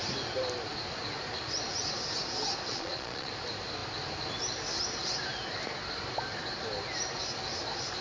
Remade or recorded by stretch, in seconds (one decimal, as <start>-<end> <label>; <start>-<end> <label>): 0.0-2.7 recorded; 2.7-3.3 remade; 3.3-8.0 recorded